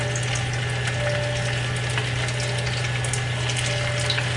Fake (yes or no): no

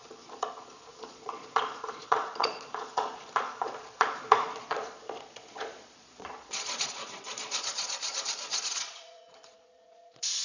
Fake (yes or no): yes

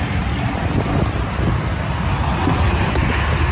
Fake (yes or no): no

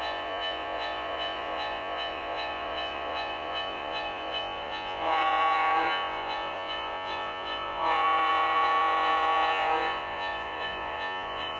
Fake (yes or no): yes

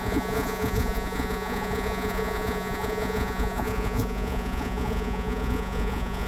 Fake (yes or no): yes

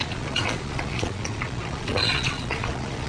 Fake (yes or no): yes